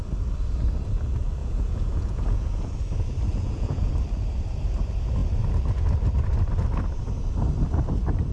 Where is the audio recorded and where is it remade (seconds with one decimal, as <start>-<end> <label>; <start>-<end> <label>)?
0.0-1.4 recorded; 1.4-2.7 remade; 2.7-3.3 recorded; 3.3-3.9 remade; 3.9-8.3 recorded